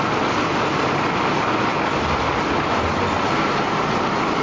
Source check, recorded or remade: recorded